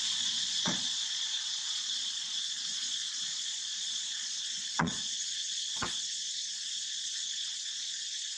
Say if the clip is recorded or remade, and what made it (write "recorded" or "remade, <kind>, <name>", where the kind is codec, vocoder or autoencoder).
remade, vocoder, Vocos